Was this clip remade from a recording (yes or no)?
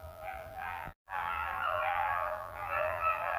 yes